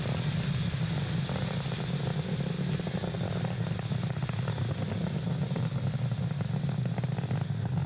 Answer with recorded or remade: recorded